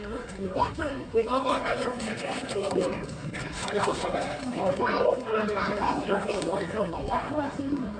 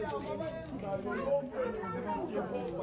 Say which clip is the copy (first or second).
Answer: first